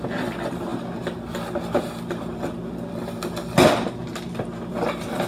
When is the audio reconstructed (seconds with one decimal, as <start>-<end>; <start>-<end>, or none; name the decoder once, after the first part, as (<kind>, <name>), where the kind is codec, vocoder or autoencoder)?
none